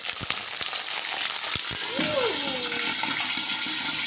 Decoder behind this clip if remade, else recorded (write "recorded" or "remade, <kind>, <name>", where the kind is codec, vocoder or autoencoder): recorded